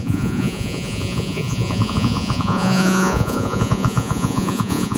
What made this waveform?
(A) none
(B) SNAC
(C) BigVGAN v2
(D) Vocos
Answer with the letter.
D